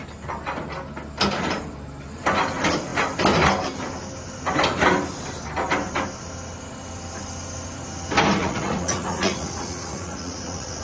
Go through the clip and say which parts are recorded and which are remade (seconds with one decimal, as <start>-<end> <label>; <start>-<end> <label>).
0.0-8.4 recorded; 8.4-10.8 remade

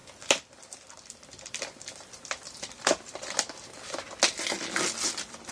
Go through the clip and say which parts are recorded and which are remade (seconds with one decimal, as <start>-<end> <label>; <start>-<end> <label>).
0.0-3.3 remade; 3.3-5.5 recorded

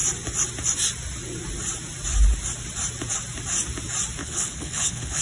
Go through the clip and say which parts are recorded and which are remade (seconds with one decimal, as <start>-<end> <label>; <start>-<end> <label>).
0.0-4.2 recorded; 4.2-5.2 remade

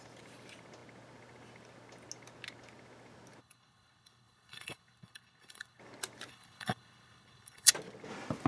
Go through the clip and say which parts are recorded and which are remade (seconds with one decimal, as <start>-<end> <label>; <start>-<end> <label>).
0.0-3.4 recorded; 3.4-5.8 remade; 5.8-6.3 recorded; 6.3-7.7 remade; 7.7-8.5 recorded